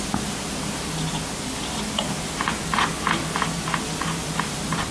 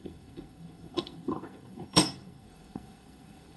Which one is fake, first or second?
second